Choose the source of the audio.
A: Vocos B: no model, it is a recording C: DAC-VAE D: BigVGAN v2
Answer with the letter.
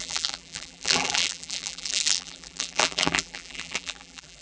D